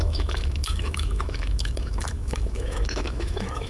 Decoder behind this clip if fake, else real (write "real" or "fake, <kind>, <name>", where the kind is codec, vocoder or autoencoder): fake, autoencoder, DAC-VAE